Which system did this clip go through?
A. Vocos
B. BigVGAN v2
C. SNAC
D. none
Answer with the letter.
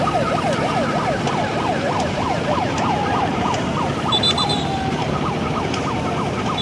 B